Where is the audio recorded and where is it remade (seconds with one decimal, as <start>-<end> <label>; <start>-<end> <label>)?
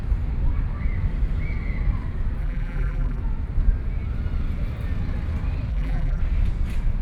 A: 0.0-2.4 recorded; 2.4-3.2 remade; 3.2-5.7 recorded; 5.7-6.2 remade; 6.2-7.0 recorded